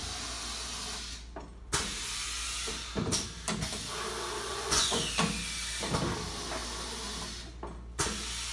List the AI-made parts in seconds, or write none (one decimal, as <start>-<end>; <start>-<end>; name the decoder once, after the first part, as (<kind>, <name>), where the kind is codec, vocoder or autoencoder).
4.5-5.0 (vocoder, Vocos)